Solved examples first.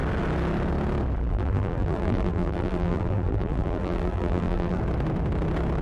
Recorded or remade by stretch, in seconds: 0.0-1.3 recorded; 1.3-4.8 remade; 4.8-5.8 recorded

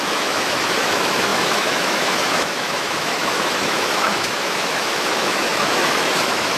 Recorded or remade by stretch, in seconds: 0.0-6.6 remade

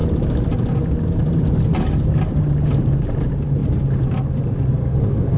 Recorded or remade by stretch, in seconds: 0.0-1.1 recorded; 1.1-3.6 remade; 3.6-4.4 recorded; 4.4-5.4 remade

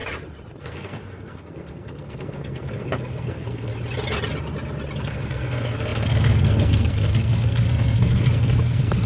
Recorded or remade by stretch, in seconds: 0.0-0.6 recorded; 0.6-3.7 remade; 3.7-5.0 recorded; 5.0-9.1 remade